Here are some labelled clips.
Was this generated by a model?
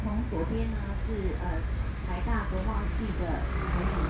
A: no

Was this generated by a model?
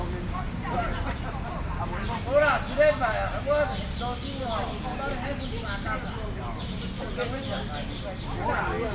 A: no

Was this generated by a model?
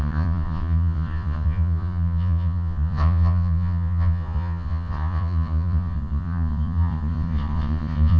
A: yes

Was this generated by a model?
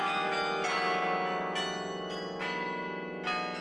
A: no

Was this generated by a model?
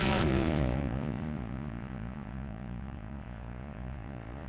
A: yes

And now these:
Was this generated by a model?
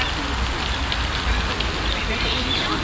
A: no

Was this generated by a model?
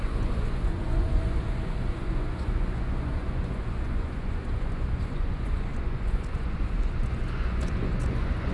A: yes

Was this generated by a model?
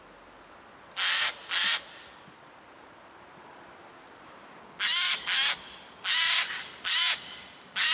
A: no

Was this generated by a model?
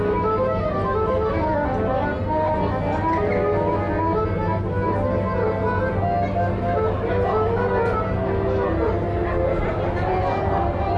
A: no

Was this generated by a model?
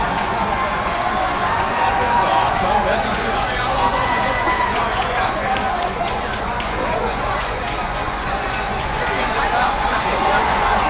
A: yes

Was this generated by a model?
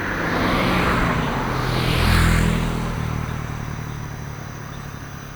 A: no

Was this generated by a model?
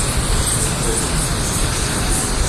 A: no